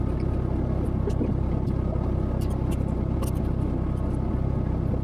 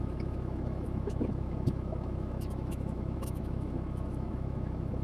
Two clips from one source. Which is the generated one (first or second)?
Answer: second